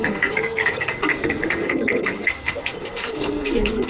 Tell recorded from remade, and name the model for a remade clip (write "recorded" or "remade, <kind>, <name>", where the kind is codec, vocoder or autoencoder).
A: remade, codec, SNAC